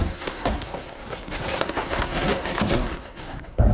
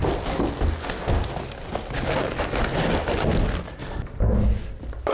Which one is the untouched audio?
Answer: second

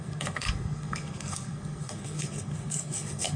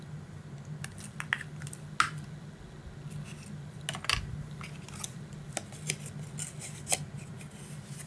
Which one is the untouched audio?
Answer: second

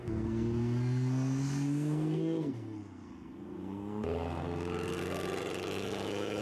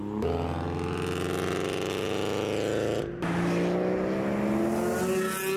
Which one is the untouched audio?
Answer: second